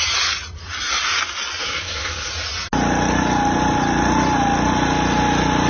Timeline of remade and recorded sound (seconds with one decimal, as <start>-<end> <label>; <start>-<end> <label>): 0.0-1.6 recorded; 1.6-2.3 remade; 2.3-5.7 recorded